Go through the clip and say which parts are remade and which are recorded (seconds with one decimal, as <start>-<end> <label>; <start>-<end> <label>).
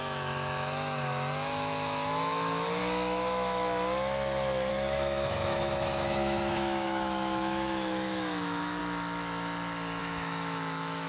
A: 0.0-2.8 remade; 2.8-4.7 recorded; 4.7-8.8 remade; 8.8-10.0 recorded; 10.0-11.1 remade